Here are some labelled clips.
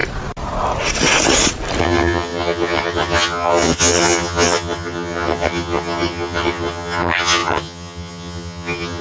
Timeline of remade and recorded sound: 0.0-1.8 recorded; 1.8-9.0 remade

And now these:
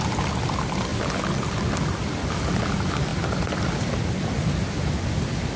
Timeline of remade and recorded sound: 0.0-5.6 recorded

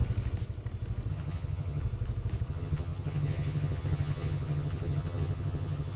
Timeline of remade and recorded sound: 0.0-1.1 recorded; 1.1-1.8 remade; 1.8-2.5 recorded; 2.5-6.0 remade

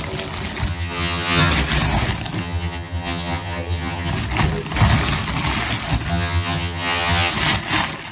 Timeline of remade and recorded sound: 0.0-0.7 recorded; 0.7-1.5 remade; 1.5-2.4 recorded; 2.4-4.1 remade; 4.1-6.1 recorded; 6.1-7.3 remade; 7.3-8.1 recorded